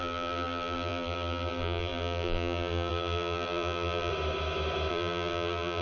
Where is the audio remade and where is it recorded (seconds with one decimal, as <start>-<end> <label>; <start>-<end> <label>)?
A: 0.0-4.1 remade; 4.1-4.9 recorded; 4.9-5.8 remade